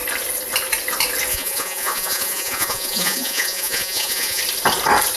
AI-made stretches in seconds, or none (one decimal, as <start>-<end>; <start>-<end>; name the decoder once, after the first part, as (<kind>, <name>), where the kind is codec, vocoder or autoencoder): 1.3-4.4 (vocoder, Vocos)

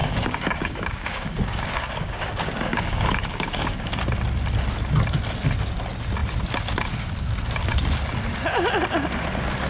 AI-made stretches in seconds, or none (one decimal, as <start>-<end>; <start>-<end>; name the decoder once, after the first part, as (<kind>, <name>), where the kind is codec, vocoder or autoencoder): 0.0-4.0 (codec, DAC)

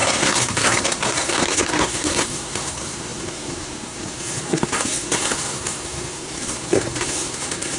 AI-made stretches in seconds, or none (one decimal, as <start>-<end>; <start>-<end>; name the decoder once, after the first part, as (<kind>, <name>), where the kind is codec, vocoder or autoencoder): 0.0-7.8 (codec, SNAC)